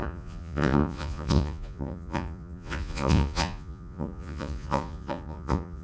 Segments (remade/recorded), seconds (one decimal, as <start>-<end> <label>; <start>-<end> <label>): 0.0-5.8 remade

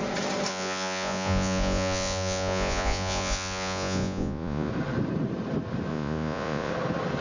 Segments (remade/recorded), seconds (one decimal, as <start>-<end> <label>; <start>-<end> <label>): 0.0-0.5 recorded; 0.5-4.7 remade; 4.7-5.9 recorded; 5.9-6.7 remade; 6.7-7.2 recorded

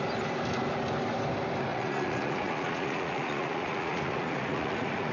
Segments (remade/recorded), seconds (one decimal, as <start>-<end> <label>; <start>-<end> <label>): 0.0-1.7 recorded; 1.7-5.1 remade